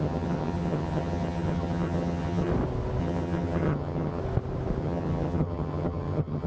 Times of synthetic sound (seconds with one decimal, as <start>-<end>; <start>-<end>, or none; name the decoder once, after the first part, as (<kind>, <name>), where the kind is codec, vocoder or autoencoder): 0.0-2.5 (vocoder, HiFi-GAN); 3.0-4.2; 4.8-6.5